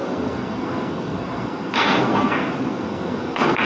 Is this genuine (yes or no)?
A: no